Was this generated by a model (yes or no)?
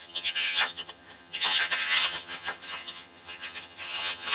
yes